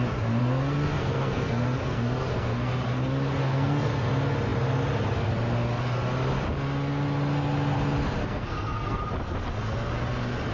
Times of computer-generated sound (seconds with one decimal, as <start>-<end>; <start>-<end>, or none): 0.4-2.7; 3.4-3.9; 8.2-9.0